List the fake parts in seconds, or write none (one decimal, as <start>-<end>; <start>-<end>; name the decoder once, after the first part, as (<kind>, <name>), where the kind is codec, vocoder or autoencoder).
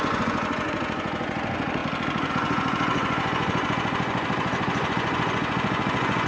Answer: 0.0-1.8 (vocoder, Vocos); 2.3-6.3